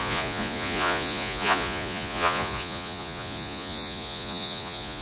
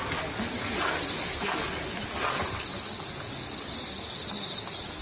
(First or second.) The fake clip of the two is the first